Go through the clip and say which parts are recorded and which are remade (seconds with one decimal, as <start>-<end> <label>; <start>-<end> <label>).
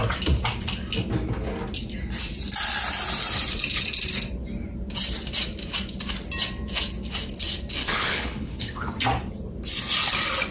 0.0-7.8 recorded; 7.8-8.9 remade; 8.9-10.5 recorded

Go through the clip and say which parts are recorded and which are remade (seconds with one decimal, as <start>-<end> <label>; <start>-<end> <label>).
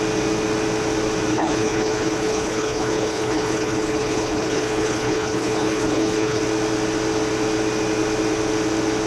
0.0-1.3 recorded; 1.3-6.4 remade; 6.4-9.1 recorded